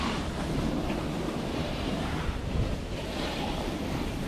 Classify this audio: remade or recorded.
remade